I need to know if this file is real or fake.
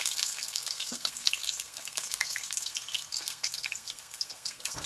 fake